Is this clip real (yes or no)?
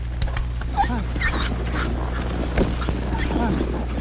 yes